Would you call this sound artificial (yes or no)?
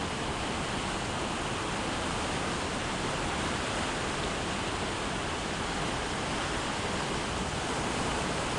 no